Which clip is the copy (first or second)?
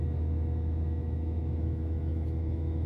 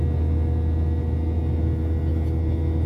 first